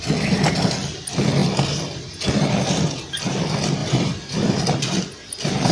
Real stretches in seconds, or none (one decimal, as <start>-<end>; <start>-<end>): 0.0-3.8; 4.5-5.7